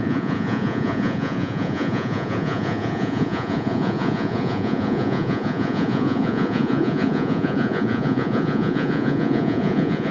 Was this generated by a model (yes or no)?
yes